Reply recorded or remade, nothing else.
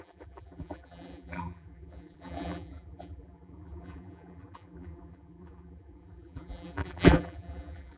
remade